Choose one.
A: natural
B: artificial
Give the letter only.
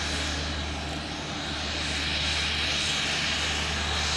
A